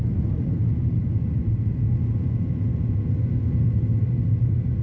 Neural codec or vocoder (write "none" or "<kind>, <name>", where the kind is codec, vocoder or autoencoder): none